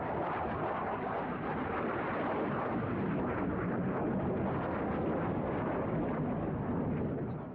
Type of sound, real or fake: real